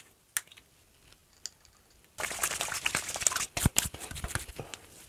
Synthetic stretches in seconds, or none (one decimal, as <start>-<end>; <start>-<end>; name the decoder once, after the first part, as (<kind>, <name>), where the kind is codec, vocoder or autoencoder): none